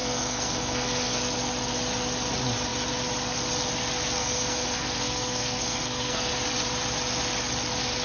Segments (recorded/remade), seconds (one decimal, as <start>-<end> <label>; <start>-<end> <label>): 0.0-1.2 remade; 1.2-4.2 recorded; 4.2-6.3 remade; 6.3-8.0 recorded